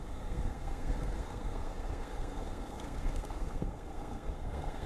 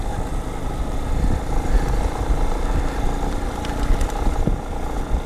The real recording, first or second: second